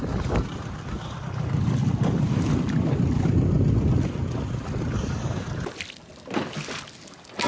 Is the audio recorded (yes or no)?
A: yes